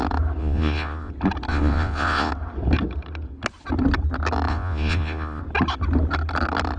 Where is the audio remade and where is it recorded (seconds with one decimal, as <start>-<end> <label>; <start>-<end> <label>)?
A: 0.0-0.4 recorded; 0.4-1.1 remade; 1.1-1.5 recorded; 1.5-2.3 remade; 2.3-4.5 recorded; 4.5-5.4 remade; 5.4-6.8 recorded